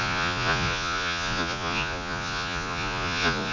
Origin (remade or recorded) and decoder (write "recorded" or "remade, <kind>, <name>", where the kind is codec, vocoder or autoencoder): remade, vocoder, Vocos